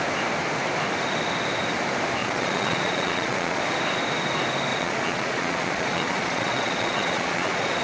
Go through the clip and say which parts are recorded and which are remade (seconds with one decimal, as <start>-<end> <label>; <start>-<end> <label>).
0.0-2.2 recorded; 2.2-3.6 remade; 3.6-4.7 recorded; 4.7-7.8 remade